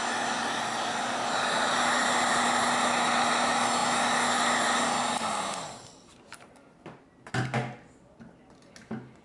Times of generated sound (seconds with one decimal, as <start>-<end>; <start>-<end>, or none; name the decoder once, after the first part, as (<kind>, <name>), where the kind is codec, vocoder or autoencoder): none